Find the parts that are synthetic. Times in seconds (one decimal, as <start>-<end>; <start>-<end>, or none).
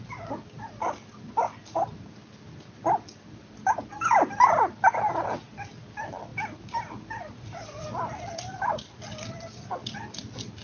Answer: none